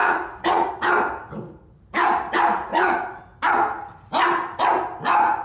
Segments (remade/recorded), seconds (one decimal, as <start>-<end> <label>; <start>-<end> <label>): 0.0-0.7 remade; 0.7-2.7 recorded; 2.7-3.2 remade; 3.2-5.4 recorded